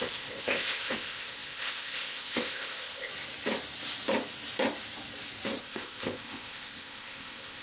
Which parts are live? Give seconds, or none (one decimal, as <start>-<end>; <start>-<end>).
3.1-5.6